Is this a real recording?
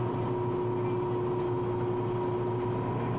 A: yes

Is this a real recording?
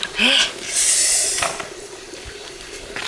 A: yes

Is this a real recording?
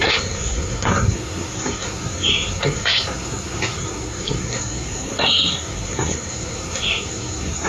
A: no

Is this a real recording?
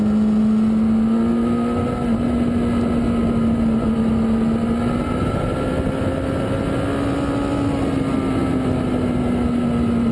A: yes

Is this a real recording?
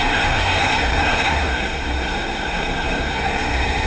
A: no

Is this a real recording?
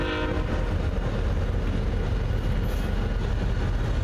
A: yes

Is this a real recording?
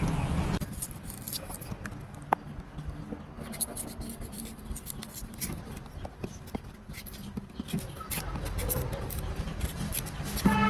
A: yes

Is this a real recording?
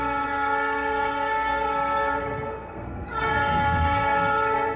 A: no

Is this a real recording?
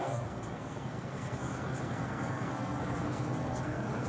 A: no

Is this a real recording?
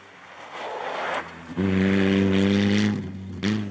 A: yes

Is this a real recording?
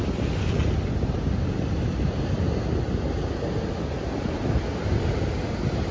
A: yes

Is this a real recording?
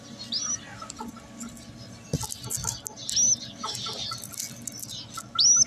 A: yes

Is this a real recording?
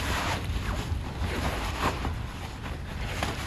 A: yes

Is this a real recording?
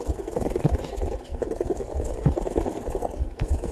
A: no